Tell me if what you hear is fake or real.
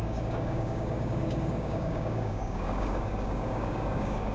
fake